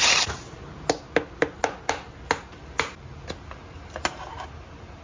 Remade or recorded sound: recorded